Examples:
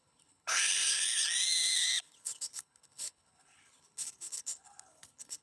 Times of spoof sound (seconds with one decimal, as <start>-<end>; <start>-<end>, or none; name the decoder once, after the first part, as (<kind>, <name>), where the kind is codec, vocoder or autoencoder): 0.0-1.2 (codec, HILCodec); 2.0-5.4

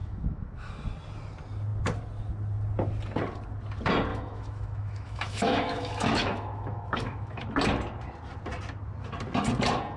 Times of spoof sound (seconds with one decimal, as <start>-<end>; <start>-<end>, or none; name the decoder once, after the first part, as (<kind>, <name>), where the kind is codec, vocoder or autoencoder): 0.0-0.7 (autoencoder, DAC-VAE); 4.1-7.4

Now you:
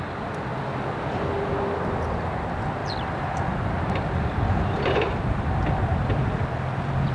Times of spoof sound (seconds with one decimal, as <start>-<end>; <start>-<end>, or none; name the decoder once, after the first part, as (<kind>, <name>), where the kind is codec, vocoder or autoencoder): 0.0-0.5 (vocoder, BigVGAN v2); 2.3-7.1